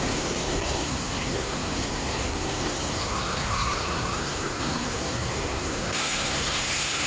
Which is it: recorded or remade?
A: remade